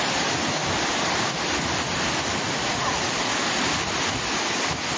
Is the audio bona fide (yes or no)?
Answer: yes